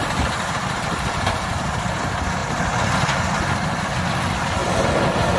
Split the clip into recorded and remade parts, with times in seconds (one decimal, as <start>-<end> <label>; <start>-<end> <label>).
0.0-5.4 recorded